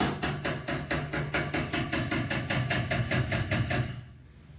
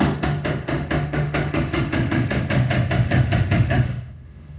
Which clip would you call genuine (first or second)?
first